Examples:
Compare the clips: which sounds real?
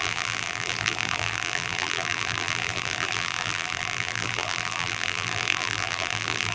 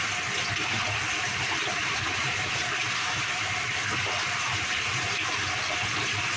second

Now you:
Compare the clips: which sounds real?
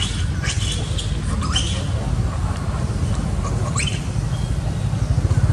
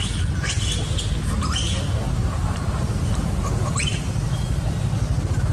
first